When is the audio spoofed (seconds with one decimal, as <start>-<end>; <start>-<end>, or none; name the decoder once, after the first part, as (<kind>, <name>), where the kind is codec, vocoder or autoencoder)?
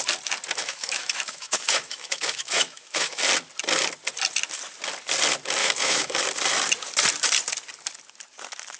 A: 0.6-3.2 (autoencoder, DAC-VAE); 5.6-6.2